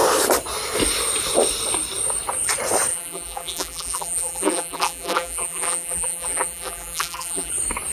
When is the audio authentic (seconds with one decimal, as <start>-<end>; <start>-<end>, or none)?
0.0-2.9; 7.5-7.9

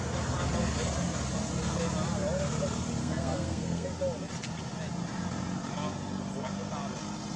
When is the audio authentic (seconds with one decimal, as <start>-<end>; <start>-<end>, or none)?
0.0-3.0; 3.9-7.4

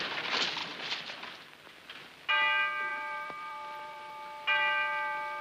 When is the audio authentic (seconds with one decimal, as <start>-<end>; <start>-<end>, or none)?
0.0-0.6; 1.3-2.9; 4.1-5.4

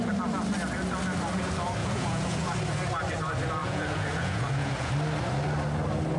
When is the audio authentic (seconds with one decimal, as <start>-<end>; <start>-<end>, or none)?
0.0-1.8; 2.5-3.6; 4.9-6.2

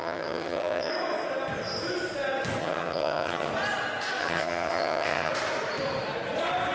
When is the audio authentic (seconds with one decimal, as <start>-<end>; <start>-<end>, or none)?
0.9-2.6; 3.5-4.2; 5.3-6.7

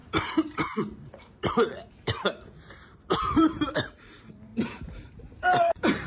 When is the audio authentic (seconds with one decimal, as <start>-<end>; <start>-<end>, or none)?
4.5-5.3

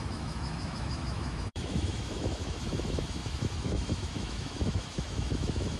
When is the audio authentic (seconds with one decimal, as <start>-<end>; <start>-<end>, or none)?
none

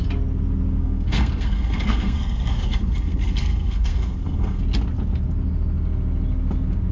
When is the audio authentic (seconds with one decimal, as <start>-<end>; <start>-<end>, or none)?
0.0-0.8; 4.6-6.9